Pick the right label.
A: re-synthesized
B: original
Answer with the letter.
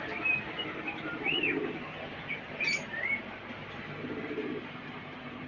A